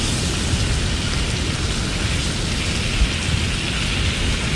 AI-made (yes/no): no